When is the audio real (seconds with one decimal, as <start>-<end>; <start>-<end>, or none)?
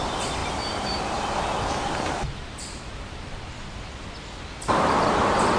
0.0-0.4; 1.0-2.4; 3.5-5.6